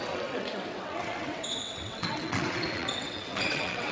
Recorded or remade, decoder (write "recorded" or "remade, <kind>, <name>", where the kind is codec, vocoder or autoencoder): remade, vocoder, WaveNeXt